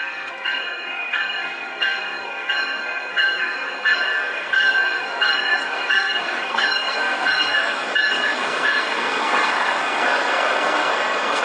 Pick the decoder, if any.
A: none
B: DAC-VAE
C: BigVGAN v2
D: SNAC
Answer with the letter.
D